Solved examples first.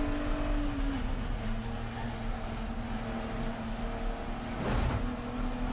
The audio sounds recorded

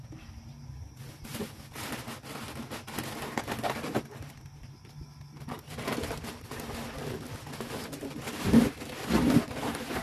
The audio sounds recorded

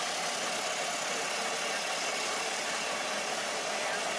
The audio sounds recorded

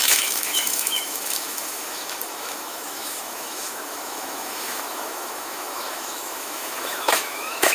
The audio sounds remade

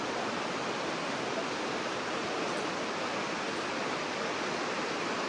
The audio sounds recorded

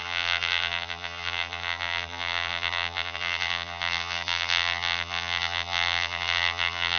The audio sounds remade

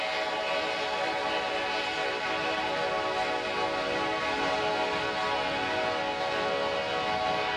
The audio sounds recorded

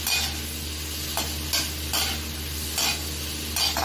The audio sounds recorded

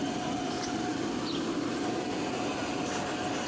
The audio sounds recorded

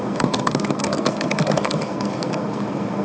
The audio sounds remade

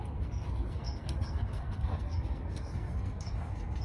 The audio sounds remade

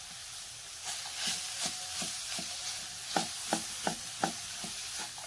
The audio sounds recorded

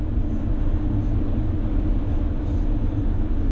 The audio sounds recorded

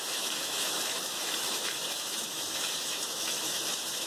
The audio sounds remade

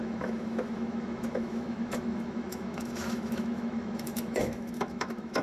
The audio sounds remade